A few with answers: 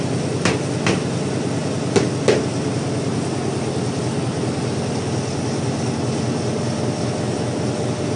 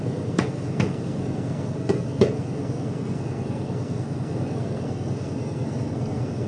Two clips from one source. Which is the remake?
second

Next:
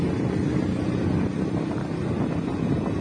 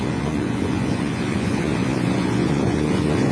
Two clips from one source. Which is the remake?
second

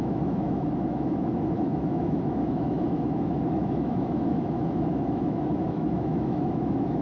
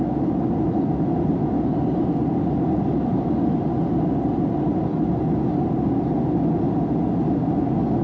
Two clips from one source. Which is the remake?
first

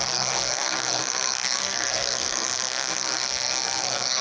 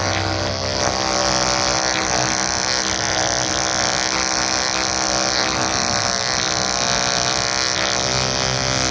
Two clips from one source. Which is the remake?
first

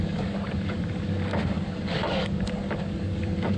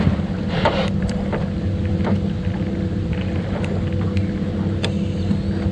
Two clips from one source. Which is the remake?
first